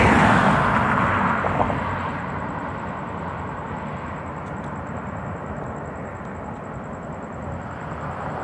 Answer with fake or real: real